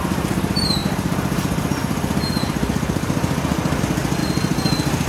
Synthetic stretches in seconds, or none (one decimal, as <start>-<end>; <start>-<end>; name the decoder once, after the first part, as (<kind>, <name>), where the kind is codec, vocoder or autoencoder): none